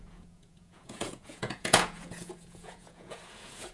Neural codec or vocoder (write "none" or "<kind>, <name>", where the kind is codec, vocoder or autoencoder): vocoder, Vocos